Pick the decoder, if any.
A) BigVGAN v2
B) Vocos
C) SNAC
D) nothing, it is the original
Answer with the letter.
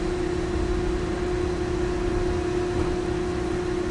D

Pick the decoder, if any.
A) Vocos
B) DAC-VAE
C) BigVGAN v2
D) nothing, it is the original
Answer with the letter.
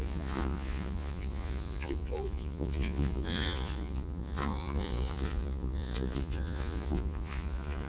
A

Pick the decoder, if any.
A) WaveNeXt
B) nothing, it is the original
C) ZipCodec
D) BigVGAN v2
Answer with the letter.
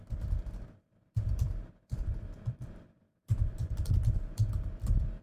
D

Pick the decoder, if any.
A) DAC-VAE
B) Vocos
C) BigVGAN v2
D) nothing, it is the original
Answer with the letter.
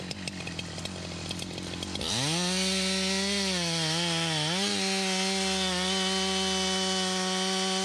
D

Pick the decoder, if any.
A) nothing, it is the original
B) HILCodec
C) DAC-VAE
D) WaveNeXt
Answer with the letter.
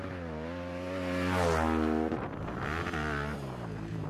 A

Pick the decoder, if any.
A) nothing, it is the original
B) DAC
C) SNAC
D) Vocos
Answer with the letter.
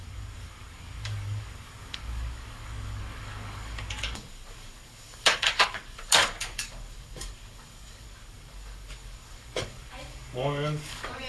B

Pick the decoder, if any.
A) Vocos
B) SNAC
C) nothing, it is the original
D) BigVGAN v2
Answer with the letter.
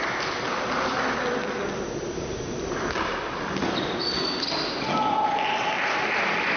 C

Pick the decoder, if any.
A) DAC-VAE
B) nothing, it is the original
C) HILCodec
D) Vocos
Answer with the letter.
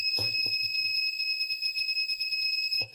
D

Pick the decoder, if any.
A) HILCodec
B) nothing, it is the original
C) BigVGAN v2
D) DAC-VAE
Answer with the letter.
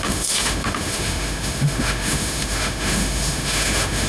D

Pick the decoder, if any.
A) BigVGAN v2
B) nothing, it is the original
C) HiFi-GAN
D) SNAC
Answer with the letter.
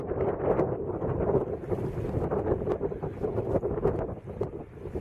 B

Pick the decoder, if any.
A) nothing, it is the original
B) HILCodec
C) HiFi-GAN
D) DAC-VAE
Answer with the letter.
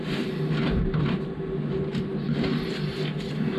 A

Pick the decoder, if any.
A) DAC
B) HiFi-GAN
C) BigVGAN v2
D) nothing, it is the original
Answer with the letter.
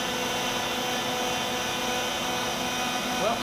D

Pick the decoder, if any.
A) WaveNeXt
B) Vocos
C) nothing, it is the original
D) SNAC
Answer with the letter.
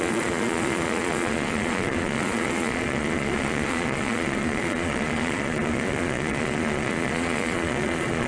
B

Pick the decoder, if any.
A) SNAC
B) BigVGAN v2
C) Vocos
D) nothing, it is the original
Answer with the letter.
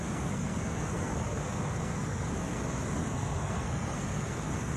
A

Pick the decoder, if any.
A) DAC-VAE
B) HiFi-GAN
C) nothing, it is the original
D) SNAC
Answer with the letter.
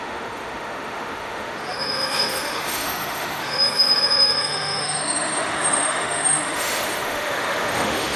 A